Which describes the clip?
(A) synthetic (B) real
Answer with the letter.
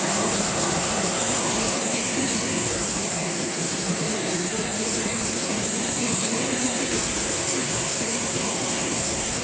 A